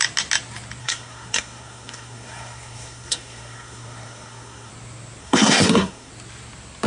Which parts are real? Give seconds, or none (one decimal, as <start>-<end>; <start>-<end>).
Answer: 0.0-0.8; 4.7-5.2; 6.1-6.9

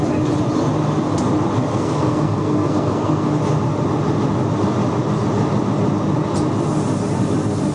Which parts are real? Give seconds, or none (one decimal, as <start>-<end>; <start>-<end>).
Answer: 0.0-1.7; 3.3-7.7

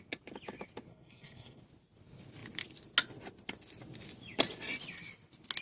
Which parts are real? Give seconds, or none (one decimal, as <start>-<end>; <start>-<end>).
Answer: 0.0-0.9; 1.6-5.6

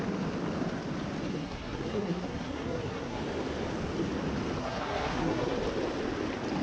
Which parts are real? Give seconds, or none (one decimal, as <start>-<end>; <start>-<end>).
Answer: 0.0-1.3; 3.2-4.6; 5.6-6.6